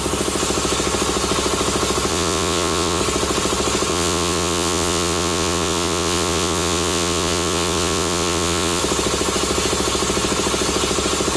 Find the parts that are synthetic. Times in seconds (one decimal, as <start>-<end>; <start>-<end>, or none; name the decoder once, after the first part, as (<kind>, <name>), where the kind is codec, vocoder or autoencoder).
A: 2.1-3.0 (vocoder, Vocos); 3.9-8.8